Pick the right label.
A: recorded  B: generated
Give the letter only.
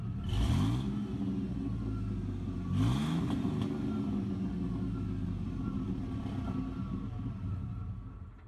A